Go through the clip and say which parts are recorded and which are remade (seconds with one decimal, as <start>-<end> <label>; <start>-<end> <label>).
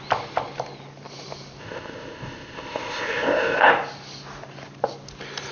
0.0-1.6 recorded; 1.6-3.7 remade; 3.7-5.5 recorded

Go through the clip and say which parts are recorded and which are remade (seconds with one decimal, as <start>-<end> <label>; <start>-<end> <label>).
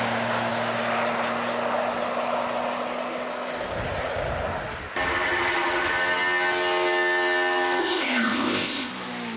0.0-7.8 recorded; 7.8-8.9 remade; 8.9-9.4 recorded